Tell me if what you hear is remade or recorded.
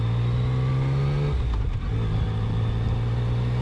recorded